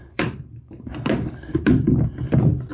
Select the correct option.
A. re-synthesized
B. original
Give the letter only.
A